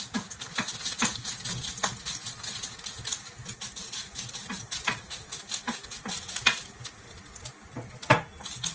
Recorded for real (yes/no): yes